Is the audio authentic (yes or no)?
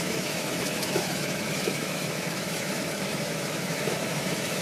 no